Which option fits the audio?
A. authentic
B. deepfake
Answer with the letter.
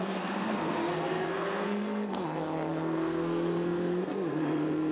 B